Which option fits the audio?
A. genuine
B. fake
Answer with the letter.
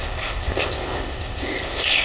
B